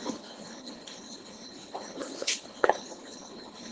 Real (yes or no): no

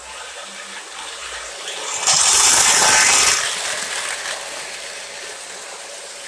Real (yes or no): yes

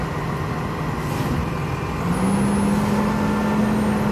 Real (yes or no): yes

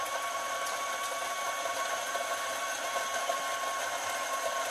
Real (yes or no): yes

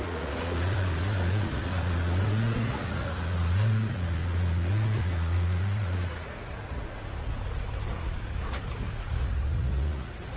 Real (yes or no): no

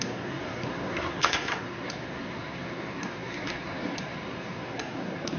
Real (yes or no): no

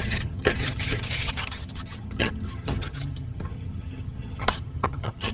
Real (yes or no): no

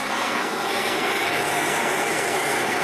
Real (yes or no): no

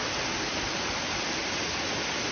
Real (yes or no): yes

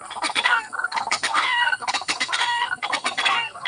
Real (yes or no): no